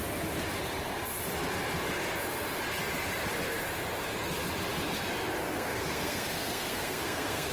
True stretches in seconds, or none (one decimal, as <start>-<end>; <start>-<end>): 0.0-5.4